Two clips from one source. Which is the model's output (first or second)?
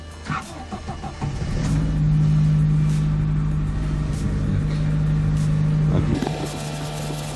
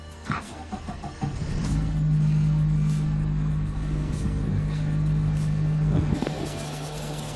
second